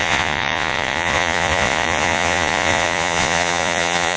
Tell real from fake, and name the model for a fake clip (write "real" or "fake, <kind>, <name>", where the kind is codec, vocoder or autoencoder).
fake, vocoder, Vocos